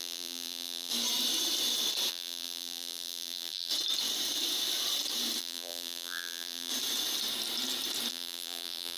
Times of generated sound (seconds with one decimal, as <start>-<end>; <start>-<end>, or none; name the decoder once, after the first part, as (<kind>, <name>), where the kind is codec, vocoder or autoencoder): 0.0-0.9 (vocoder, BigVGAN v2); 2.1-3.7; 5.4-6.7; 8.1-9.0

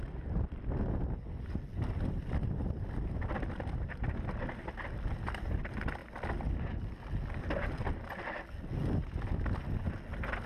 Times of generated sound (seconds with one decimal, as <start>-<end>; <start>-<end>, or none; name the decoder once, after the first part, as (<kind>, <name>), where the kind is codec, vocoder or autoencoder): none

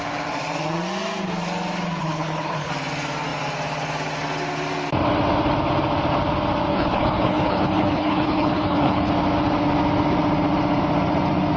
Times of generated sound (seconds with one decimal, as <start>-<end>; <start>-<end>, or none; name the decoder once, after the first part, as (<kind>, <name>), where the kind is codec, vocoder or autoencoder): 2.0-2.7 (codec, HILCodec); 6.7-9.1

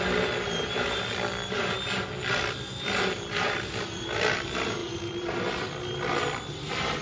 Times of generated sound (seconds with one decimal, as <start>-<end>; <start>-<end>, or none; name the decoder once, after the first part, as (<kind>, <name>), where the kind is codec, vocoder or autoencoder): none

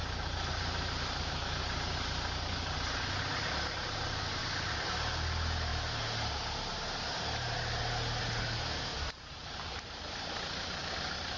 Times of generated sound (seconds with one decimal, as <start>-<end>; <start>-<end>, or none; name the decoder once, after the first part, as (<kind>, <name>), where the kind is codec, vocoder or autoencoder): 0.0-1.3 (vocoder, BigVGAN v2); 4.4-4.9; 5.7-7.8; 8.9-10.1

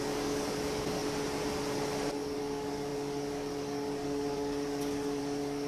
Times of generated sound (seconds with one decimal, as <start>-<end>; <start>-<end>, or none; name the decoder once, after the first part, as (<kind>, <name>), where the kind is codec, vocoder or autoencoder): 0.0-1.0 (codec, DAC); 2.1-5.7

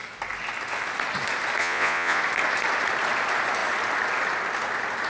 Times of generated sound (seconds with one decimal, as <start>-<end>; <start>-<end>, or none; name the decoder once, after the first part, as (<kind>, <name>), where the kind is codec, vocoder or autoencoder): 1.6-2.2 (vocoder, Vocos)